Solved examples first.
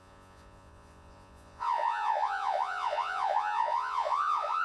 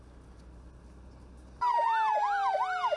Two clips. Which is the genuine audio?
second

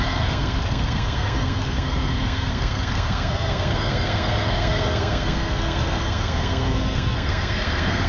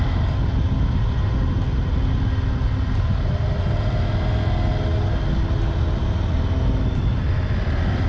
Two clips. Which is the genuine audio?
second